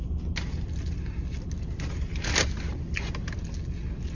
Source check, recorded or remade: recorded